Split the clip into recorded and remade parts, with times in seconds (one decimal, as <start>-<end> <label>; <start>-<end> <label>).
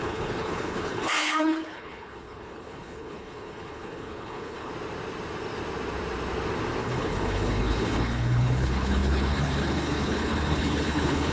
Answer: 0.0-4.7 remade; 4.7-6.8 recorded; 6.8-11.3 remade